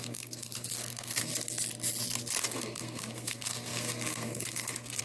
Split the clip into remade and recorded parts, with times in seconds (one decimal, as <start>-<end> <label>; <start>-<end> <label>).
0.0-1.3 remade; 1.3-2.4 recorded; 2.4-5.0 remade

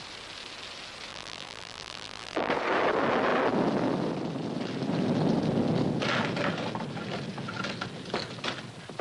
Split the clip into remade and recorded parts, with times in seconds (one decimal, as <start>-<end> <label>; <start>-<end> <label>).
0.0-1.1 recorded; 1.1-2.5 remade; 2.5-9.0 recorded

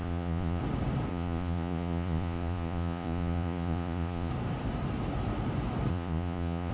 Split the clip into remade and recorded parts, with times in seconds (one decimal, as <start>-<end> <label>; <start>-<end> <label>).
0.0-0.6 remade; 0.6-1.1 recorded; 1.1-4.3 remade; 4.3-5.9 recorded; 5.9-6.7 remade

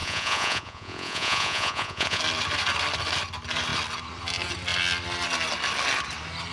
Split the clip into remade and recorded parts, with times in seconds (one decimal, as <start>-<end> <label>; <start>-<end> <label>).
0.0-2.2 remade; 2.2-6.5 recorded

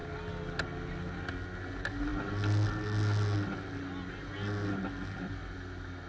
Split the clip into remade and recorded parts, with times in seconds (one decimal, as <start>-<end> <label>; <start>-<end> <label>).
0.0-6.1 recorded